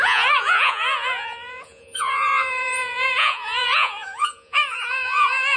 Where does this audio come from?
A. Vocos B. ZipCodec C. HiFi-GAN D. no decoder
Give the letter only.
A